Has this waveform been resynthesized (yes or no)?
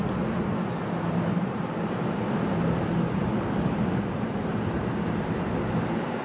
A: no